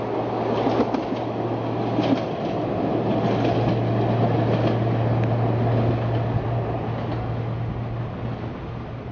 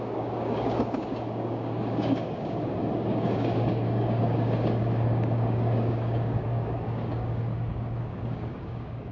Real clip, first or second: first